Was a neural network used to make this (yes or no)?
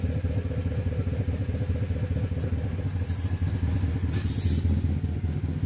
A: no